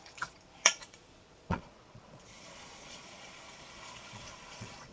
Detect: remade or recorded remade